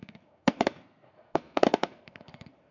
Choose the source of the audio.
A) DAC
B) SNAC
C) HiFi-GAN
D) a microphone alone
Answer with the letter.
B